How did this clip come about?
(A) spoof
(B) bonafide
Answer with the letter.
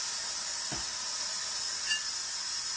B